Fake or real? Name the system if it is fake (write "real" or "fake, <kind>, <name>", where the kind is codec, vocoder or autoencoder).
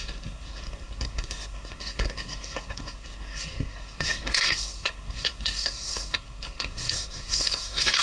fake, codec, SNAC